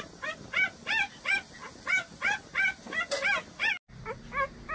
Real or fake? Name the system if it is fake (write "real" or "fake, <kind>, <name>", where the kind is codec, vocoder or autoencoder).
real